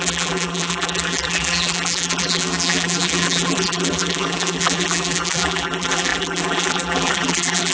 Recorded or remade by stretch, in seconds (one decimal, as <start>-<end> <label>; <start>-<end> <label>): 0.0-7.7 remade